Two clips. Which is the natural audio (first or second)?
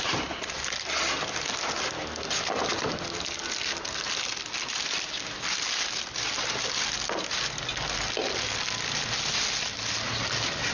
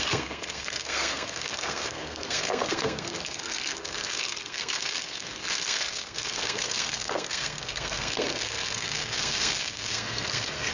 first